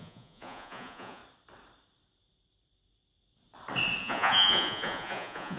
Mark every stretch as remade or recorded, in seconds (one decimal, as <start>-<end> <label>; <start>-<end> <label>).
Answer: 0.0-1.2 remade; 1.2-4.0 recorded; 4.0-5.6 remade